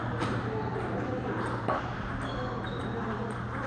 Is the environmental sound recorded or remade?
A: remade